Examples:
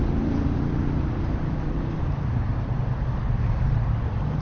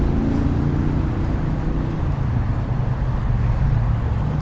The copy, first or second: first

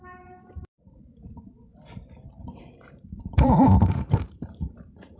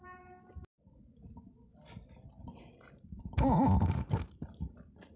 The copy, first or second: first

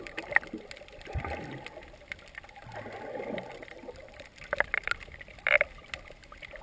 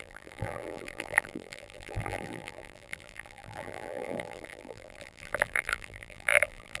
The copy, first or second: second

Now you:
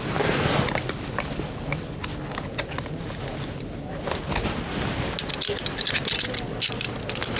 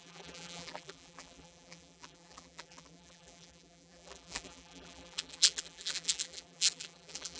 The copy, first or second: second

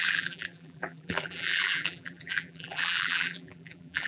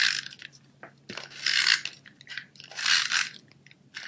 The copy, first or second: first